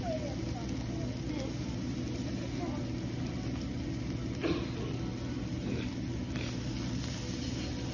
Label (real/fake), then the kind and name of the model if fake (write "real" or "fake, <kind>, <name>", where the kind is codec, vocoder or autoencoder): real